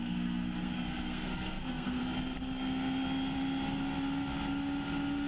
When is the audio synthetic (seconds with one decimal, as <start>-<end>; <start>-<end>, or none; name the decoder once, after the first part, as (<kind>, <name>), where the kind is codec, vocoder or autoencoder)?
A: 0.0-2.0 (codec, SNAC)